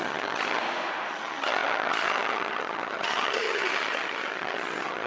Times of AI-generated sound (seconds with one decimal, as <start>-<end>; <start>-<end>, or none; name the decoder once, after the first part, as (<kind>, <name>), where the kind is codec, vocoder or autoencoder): 0.0-0.6 (vocoder, HiFi-GAN); 1.1-5.1

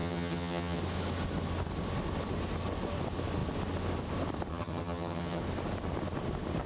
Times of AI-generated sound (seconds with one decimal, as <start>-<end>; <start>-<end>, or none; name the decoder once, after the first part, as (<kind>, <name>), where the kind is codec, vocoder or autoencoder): 0.0-0.8 (vocoder, HiFi-GAN); 4.5-5.4

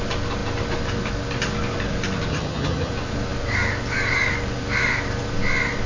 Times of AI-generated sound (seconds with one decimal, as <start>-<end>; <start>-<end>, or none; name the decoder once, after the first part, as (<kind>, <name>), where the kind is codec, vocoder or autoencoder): 2.3-2.9 (vocoder, HiFi-GAN)

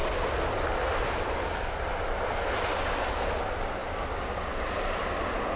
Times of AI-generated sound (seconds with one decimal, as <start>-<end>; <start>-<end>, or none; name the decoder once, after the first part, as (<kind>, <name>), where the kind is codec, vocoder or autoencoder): none

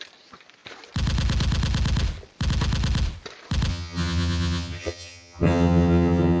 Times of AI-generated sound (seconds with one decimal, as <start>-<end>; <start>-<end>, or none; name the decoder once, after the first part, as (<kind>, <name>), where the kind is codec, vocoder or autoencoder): 3.7-6.4 (vocoder, HiFi-GAN)

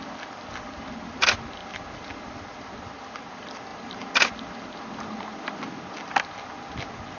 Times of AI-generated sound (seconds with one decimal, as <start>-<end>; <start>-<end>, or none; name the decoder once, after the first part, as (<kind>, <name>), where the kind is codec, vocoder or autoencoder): none

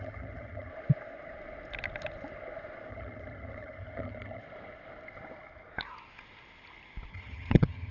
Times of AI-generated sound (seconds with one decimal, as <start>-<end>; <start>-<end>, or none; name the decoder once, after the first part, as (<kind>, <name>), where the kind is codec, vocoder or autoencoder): 0.0-0.7 (vocoder, HiFi-GAN); 2.9-4.4; 7.1-7.9